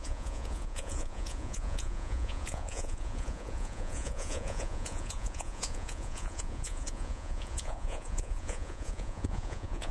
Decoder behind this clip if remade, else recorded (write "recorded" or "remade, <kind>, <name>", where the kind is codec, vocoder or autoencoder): remade, vocoder, Vocos